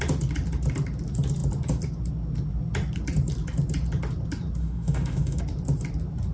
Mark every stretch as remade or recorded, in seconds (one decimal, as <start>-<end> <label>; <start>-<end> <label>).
0.0-4.6 recorded; 4.6-5.4 remade; 5.4-6.3 recorded